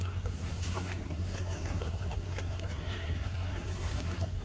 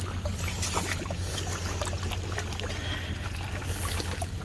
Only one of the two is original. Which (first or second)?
second